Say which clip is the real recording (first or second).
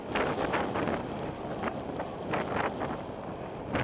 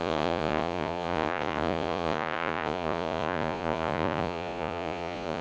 first